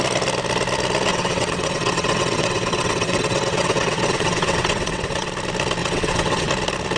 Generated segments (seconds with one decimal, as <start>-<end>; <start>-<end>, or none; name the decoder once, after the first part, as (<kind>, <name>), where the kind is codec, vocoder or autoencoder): 1.1-5.3 (vocoder, WaveNeXt); 5.8-6.5

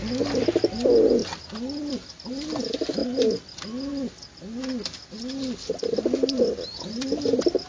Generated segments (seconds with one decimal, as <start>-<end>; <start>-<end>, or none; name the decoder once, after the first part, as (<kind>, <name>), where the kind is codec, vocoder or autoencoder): none

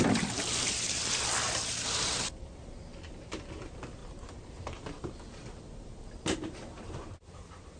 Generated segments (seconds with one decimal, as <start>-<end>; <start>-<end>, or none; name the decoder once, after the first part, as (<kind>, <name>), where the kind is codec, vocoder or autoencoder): none

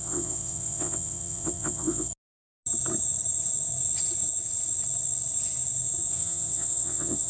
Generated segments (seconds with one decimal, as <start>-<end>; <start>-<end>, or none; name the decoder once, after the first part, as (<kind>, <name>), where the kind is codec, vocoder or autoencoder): 0.0-2.1 (vocoder, WaveNeXt); 6.1-7.3

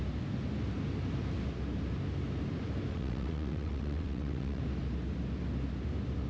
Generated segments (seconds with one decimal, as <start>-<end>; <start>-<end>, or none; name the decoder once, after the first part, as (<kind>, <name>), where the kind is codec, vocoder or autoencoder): 2.9-4.6 (vocoder, WaveNeXt)

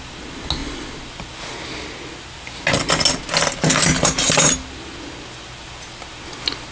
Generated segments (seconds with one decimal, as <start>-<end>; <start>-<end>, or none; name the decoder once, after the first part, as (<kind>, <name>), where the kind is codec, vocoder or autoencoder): none